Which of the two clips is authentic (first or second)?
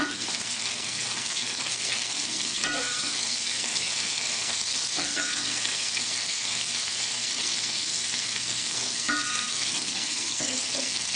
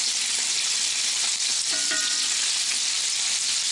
second